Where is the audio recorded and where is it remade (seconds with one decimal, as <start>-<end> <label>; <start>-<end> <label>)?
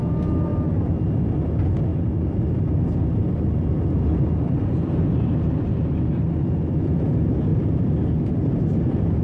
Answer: 0.0-9.2 recorded